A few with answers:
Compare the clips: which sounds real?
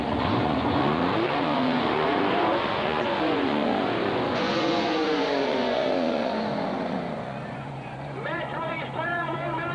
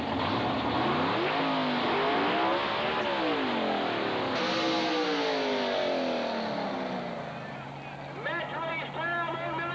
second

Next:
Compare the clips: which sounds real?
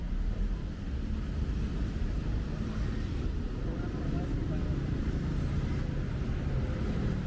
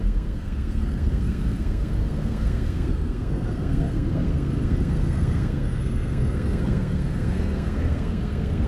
first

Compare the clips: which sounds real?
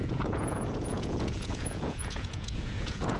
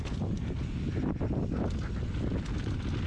second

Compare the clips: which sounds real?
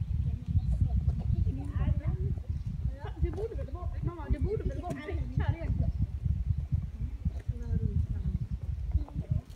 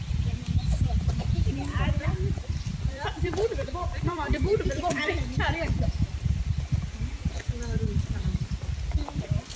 first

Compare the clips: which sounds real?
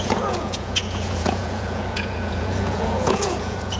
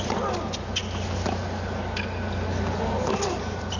second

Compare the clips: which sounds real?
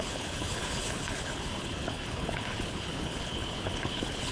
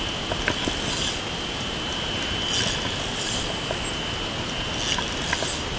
second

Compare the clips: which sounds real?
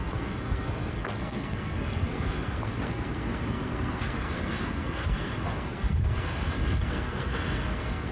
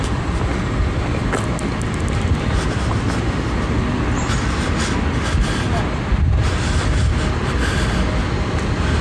second